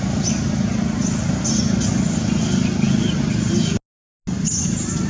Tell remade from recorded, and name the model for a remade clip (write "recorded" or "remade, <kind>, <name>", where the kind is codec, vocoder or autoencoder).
recorded